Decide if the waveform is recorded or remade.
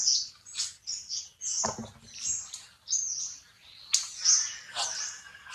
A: recorded